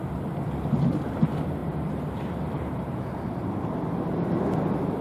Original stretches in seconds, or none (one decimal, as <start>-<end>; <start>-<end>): 0.0-1.6; 3.6-5.0